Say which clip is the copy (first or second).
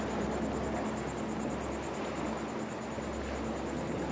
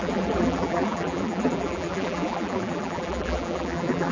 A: second